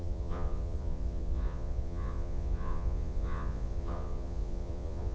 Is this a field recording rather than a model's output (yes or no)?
no